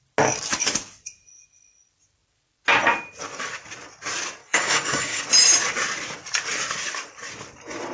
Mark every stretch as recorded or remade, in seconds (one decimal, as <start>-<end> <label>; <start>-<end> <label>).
0.0-4.4 recorded; 4.4-5.2 remade; 5.2-7.9 recorded